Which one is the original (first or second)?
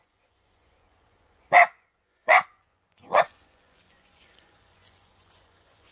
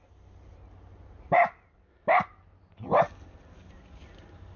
second